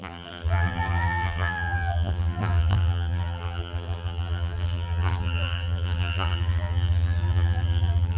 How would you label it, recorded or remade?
remade